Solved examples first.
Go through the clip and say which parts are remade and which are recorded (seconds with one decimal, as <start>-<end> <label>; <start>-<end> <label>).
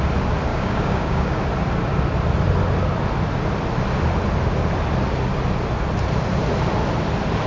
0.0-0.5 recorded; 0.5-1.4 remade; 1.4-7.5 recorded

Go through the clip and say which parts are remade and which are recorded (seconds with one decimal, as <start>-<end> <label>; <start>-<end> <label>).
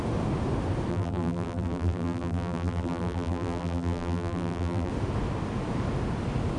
0.0-0.9 recorded; 0.9-4.9 remade; 4.9-6.6 recorded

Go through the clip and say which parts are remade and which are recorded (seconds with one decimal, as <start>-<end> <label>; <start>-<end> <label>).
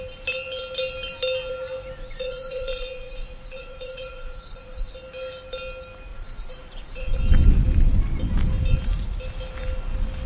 0.0-2.0 recorded; 2.0-4.9 remade; 4.9-6.1 recorded; 6.1-7.2 remade; 7.2-10.3 recorded